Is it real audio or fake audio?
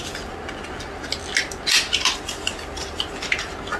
real